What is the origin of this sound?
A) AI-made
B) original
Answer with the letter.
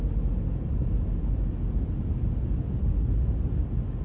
B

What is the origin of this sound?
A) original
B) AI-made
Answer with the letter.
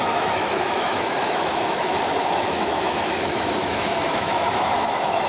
B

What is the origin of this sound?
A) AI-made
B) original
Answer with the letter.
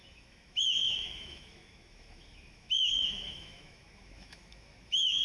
A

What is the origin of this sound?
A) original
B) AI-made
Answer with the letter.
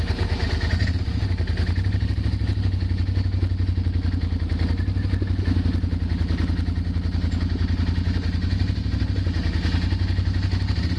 A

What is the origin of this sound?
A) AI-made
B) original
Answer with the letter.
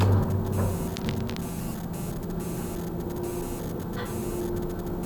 B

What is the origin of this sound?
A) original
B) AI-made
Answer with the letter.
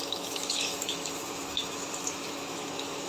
B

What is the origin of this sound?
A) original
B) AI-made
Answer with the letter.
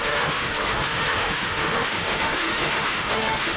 B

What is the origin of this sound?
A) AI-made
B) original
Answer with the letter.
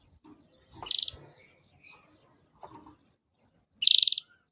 B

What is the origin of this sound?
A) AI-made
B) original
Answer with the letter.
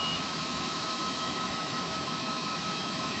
A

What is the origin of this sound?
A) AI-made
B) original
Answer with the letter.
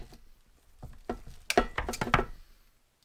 B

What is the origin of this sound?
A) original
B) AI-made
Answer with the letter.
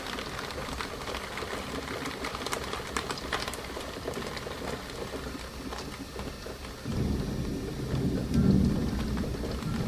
A